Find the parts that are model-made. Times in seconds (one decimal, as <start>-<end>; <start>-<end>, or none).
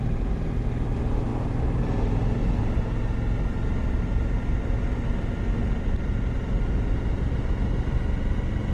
none